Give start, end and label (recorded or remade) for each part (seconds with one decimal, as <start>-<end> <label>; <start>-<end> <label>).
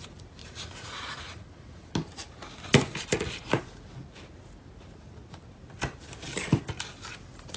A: 0.0-0.4 recorded; 0.4-1.9 remade; 1.9-7.6 recorded